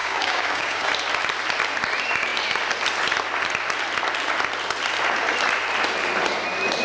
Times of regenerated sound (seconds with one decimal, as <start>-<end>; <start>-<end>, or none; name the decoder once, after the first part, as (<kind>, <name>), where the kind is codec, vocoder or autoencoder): 0.0-0.9 (codec, DAC)